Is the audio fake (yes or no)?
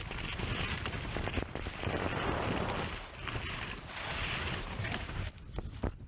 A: no